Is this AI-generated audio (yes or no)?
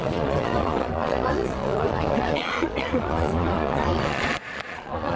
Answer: yes